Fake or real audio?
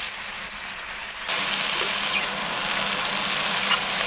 real